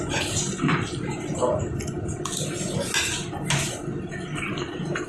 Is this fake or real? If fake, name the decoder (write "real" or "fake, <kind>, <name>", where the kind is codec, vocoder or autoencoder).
real